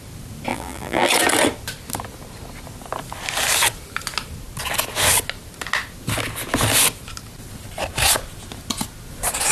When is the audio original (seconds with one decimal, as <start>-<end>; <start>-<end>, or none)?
0.0-0.5; 1.1-9.5